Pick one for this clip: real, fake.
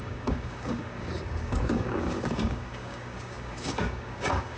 fake